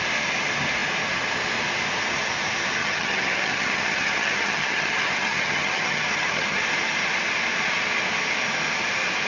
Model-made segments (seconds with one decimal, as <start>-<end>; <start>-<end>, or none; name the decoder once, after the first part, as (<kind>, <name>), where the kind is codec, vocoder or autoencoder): 2.8-6.6 (vocoder, HiFi-GAN)